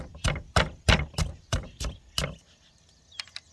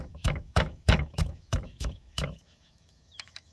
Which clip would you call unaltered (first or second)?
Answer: first